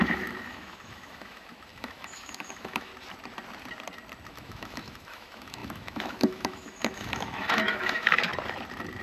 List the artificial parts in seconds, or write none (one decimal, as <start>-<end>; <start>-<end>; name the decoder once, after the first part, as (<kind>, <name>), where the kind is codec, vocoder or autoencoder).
0.0-2.9 (autoencoder, DAC-VAE); 4.3-8.3